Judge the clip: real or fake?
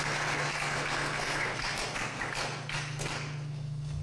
fake